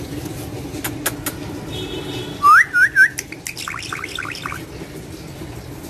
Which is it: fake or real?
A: real